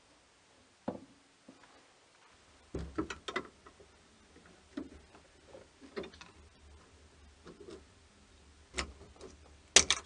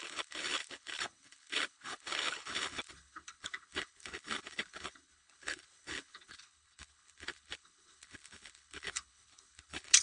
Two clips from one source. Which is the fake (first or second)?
second